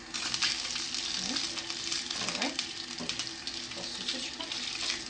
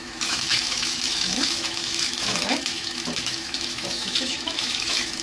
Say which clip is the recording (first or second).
first